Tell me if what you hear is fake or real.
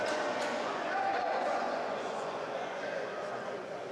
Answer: fake